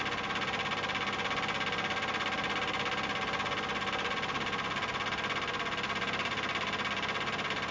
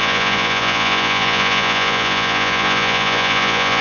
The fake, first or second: second